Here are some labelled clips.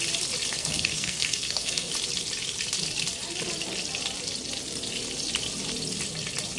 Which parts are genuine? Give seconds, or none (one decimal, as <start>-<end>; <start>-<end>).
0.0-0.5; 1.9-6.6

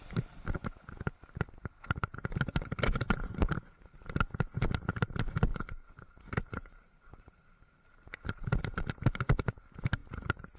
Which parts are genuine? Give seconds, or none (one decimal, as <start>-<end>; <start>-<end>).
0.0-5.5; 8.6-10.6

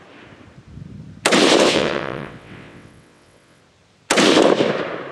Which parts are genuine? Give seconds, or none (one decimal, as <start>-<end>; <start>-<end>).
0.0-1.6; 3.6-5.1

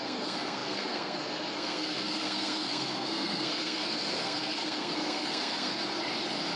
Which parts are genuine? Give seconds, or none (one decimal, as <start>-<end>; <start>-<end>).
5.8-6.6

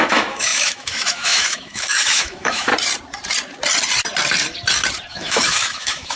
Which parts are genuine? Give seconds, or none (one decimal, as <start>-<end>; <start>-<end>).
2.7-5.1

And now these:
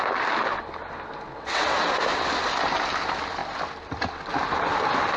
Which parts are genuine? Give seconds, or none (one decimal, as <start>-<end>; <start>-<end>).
0.0-1.3; 1.9-5.2

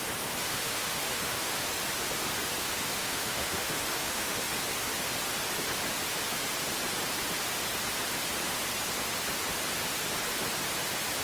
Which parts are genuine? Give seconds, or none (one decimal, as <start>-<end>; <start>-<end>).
0.0-0.5; 1.6-2.6; 4.5-11.2